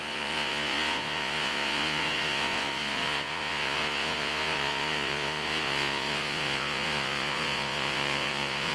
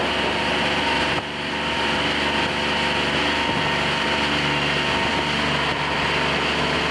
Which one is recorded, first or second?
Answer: second